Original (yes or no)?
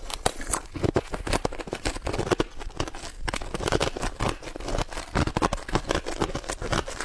yes